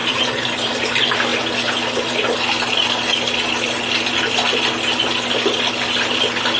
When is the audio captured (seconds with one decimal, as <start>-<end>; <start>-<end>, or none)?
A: 0.7-6.6